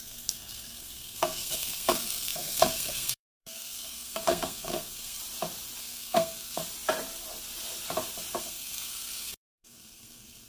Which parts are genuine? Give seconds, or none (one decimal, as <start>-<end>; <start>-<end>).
5.2-5.8; 6.6-8.4